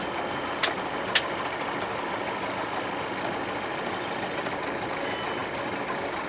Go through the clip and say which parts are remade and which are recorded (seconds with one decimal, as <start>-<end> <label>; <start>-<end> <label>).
0.0-6.3 recorded